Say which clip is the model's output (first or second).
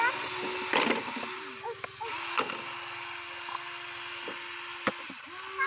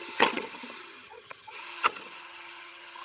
second